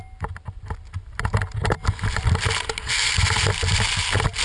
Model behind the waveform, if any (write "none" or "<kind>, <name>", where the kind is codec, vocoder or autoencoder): none